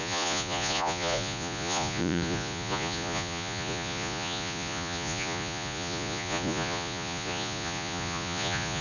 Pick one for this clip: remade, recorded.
remade